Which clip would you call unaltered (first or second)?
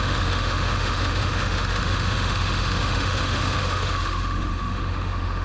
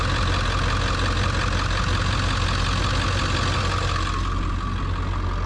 second